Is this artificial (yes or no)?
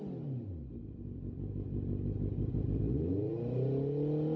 no